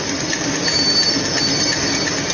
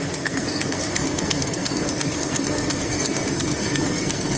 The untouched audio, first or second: first